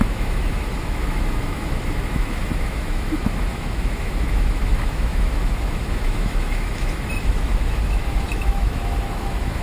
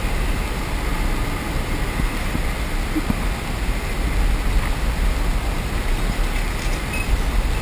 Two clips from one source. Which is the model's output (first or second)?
first